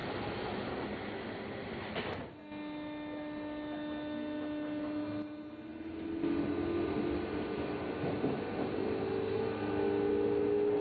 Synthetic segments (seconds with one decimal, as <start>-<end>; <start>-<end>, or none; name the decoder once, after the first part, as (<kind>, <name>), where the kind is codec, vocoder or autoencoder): none